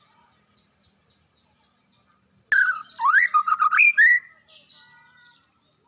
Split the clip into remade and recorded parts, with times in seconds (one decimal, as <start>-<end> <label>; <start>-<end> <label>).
0.0-5.9 recorded

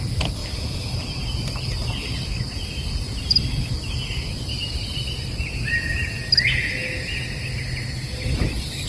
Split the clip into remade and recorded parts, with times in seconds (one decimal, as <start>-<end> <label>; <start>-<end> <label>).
0.0-8.9 recorded